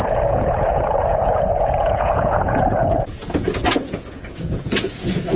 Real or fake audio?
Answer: fake